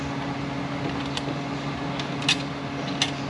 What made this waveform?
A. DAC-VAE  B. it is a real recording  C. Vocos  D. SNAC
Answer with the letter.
B